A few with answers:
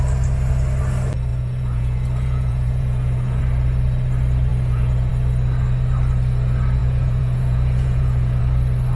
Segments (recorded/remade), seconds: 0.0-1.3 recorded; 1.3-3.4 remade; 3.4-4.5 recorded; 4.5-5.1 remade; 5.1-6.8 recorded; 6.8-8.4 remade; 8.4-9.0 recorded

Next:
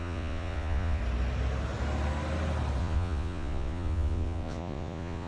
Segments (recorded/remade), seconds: 0.0-1.0 remade; 1.0-2.8 recorded; 2.8-5.3 remade

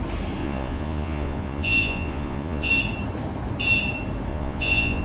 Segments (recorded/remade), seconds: 0.0-0.4 recorded; 0.4-2.7 remade; 2.7-4.3 recorded; 4.3-5.0 remade

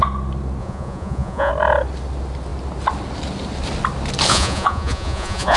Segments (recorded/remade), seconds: 0.0-0.6 recorded; 0.6-1.5 remade; 1.5-4.3 recorded; 4.3-5.6 remade

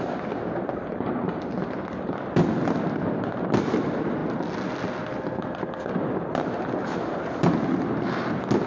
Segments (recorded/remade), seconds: 0.0-8.7 recorded

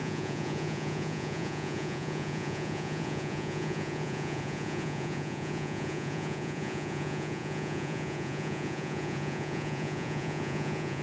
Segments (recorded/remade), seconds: 0.0-11.0 remade

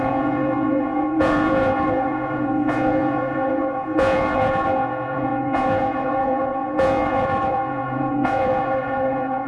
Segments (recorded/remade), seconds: 0.0-9.5 remade

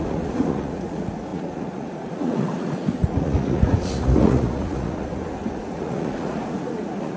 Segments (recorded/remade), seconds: 0.0-7.2 remade